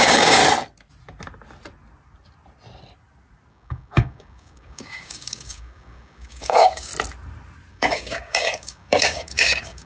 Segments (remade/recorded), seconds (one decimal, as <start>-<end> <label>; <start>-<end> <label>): 0.0-0.4 remade; 0.4-3.5 recorded; 3.5-6.9 remade; 6.9-7.7 recorded; 7.7-9.9 remade